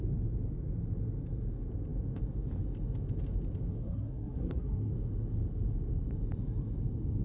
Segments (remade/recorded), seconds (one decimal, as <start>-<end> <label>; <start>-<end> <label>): 0.0-3.7 recorded; 3.7-4.9 remade; 4.9-7.2 recorded